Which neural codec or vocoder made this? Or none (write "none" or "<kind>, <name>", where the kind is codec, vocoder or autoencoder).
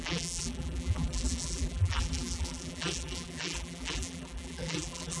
vocoder, BigVGAN v2